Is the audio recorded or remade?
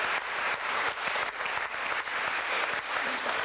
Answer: recorded